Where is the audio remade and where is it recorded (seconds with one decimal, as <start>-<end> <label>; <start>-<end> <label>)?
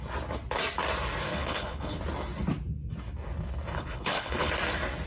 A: 0.0-1.3 recorded; 1.3-2.0 remade; 2.0-3.7 recorded; 3.7-4.5 remade; 4.5-5.1 recorded